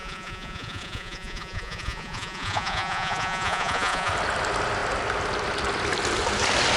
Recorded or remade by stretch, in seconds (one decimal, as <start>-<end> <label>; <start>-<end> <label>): 0.0-4.1 remade; 4.1-6.8 recorded